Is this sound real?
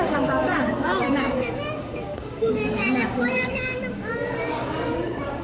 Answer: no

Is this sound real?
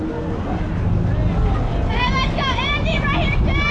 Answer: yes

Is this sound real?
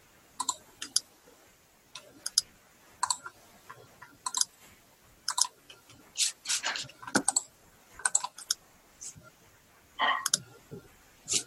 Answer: yes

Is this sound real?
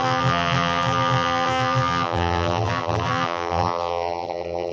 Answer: no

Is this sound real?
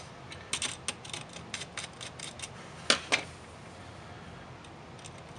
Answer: yes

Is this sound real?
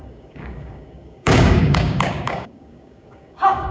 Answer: no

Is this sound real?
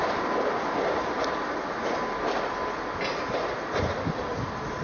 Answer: yes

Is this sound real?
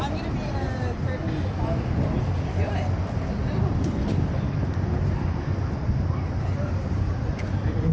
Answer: yes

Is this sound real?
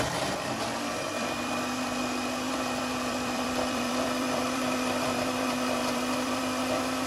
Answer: no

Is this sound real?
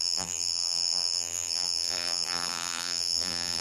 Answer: no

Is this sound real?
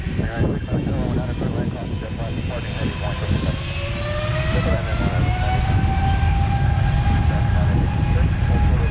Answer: yes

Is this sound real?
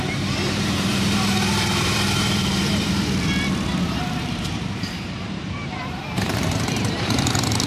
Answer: no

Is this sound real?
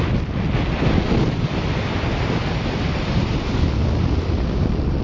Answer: yes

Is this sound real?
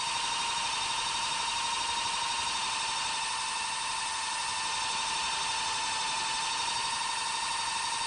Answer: yes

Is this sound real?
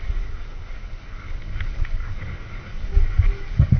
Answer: no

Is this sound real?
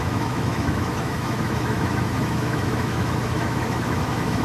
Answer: no